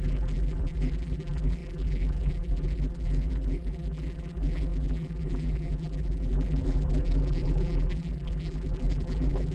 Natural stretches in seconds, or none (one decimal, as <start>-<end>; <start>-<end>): none